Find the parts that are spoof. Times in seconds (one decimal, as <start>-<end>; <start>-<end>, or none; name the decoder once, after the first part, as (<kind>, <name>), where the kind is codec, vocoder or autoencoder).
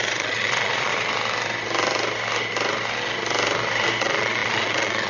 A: 0.0-0.9 (vocoder, Vocos); 4.0-5.1